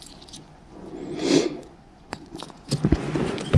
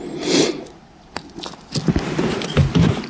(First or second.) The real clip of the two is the second